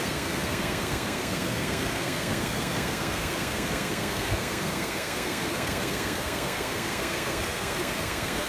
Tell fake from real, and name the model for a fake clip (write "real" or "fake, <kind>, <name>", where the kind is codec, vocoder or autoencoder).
fake, codec, SNAC